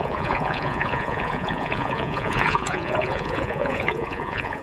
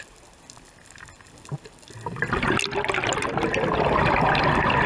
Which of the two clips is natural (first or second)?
second